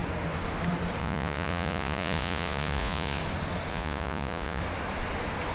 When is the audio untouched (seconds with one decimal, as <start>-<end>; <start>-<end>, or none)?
0.0-1.0; 3.2-3.7; 4.6-5.5